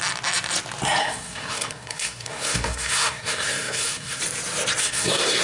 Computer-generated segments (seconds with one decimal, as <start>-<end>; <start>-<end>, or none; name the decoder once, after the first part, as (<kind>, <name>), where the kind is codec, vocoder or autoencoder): 1.0-4.2 (codec, SNAC); 4.8-5.4